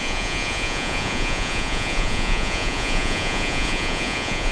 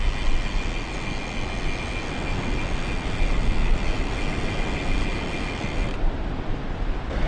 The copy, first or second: first